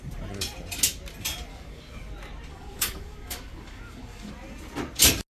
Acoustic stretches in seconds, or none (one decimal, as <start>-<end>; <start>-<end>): 0.0-1.5; 2.1-2.5; 4.3-5.3